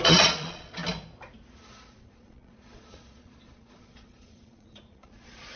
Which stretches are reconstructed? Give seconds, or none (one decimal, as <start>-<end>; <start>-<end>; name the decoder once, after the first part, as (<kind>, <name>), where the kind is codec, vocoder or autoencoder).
0.0-0.8 (vocoder, Vocos); 1.7-5.6